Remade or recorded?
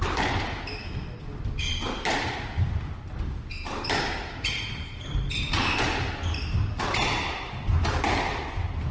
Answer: recorded